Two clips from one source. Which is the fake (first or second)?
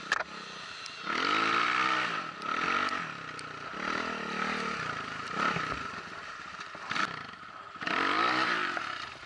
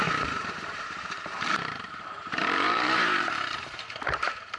second